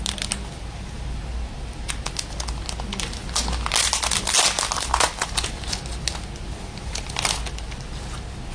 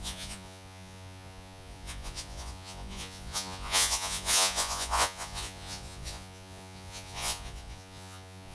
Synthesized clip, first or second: second